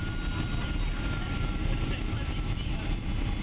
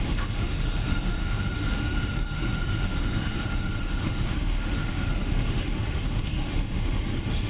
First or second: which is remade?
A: second